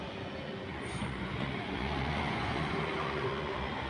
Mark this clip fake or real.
fake